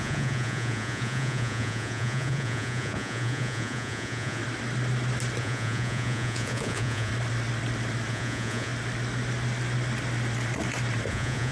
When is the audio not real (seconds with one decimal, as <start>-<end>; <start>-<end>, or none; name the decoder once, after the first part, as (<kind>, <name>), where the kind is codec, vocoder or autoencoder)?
0.0-4.4 (vocoder, Vocos); 5.4-7.1; 8.1-8.7; 11.1-11.5